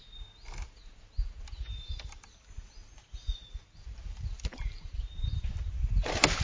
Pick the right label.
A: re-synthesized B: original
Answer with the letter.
B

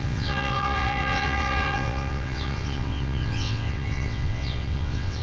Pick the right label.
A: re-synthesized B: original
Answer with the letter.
A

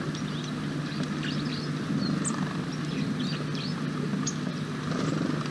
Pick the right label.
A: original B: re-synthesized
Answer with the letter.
A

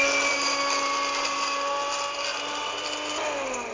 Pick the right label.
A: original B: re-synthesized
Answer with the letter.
A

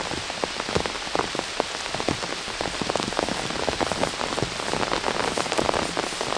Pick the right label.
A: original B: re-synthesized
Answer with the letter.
A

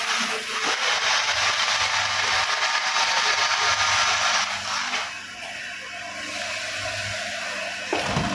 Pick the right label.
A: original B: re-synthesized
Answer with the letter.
A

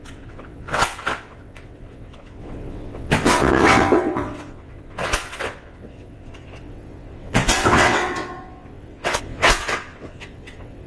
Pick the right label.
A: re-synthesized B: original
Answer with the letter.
A